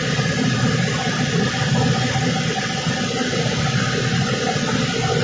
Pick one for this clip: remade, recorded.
recorded